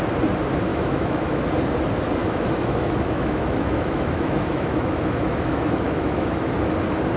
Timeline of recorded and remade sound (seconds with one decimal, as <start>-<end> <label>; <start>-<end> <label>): 0.0-0.7 recorded; 0.7-1.4 remade; 1.4-2.2 recorded; 2.2-6.5 remade; 6.5-7.2 recorded